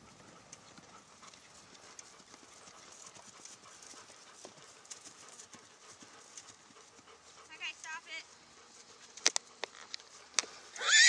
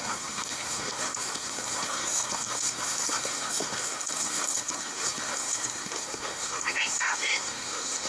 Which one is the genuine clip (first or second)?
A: first